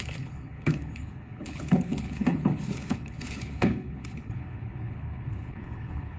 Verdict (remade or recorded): remade